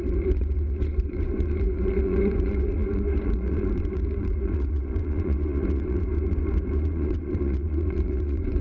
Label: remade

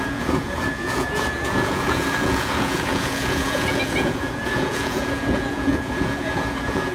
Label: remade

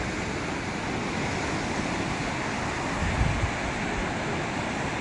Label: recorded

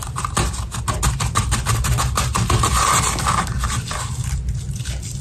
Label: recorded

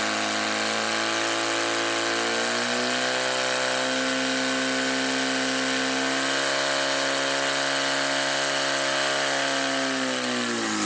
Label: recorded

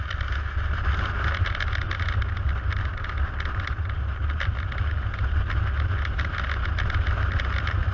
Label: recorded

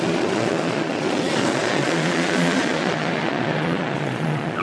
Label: remade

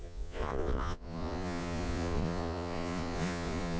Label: remade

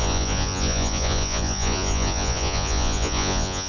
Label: remade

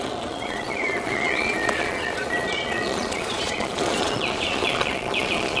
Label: remade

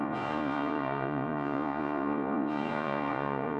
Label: remade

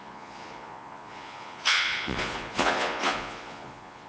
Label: remade